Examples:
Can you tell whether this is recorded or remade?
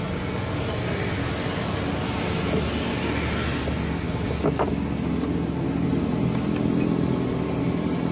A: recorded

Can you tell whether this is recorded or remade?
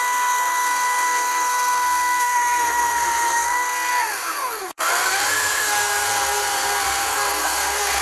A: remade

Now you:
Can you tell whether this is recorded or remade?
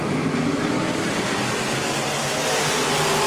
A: recorded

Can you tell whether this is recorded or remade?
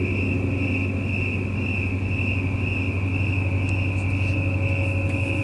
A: recorded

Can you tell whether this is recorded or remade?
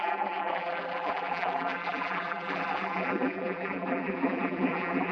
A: remade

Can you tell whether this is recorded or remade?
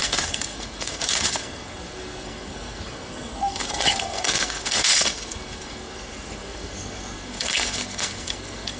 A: remade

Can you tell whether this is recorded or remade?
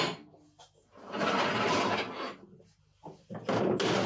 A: recorded